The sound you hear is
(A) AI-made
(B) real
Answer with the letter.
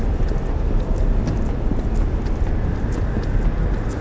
B